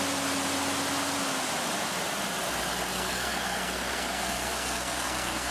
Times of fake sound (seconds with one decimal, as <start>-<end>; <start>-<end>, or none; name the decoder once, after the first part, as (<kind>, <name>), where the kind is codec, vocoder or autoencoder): 2.9-5.5 (codec, SNAC)